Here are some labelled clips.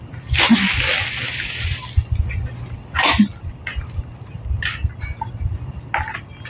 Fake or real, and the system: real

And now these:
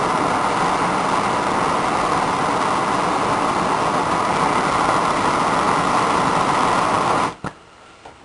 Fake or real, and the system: real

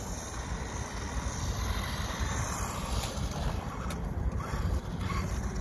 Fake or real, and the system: real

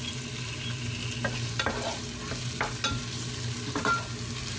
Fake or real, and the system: real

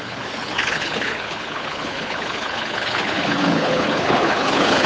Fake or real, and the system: fake, codec, HILCodec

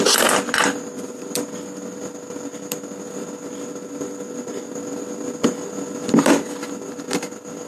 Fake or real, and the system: real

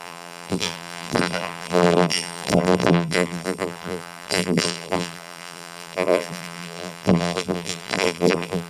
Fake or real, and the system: fake, vocoder, BigVGAN v2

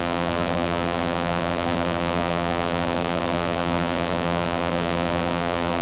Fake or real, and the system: fake, vocoder, BigVGAN v2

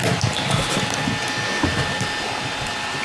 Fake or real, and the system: real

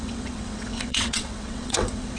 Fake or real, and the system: fake, vocoder, WaveNeXt